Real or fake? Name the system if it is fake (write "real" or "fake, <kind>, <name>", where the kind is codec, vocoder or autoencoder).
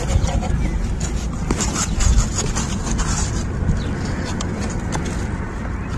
real